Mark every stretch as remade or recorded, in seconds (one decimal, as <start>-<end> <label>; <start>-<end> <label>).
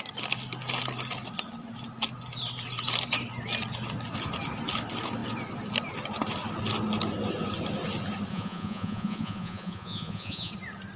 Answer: 0.0-8.3 recorded; 8.3-10.5 remade; 10.5-11.0 recorded